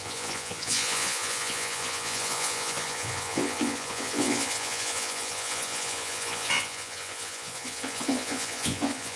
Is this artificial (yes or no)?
yes